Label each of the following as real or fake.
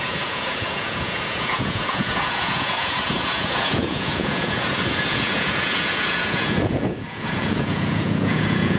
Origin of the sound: fake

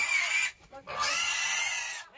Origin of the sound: real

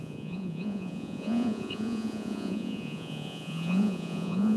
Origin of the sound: fake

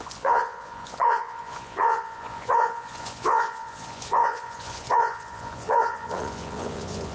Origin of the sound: fake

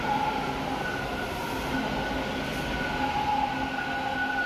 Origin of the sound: real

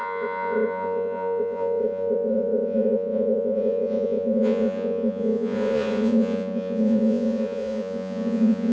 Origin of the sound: fake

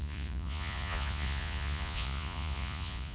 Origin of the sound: fake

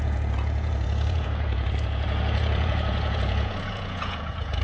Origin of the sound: fake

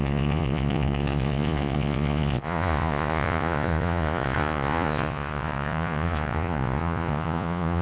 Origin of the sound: fake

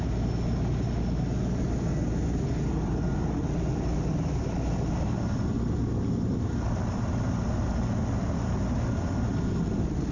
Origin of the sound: real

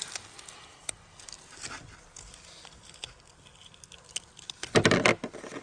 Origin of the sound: real